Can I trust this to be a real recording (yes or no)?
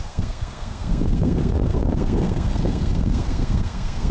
no